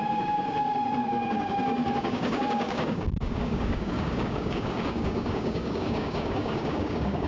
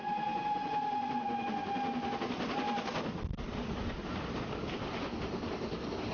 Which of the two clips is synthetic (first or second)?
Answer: first